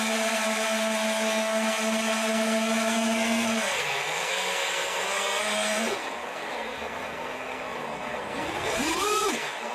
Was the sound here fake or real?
fake